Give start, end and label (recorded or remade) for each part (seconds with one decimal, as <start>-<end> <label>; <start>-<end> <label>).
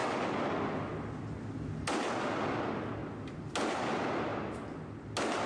0.0-5.5 recorded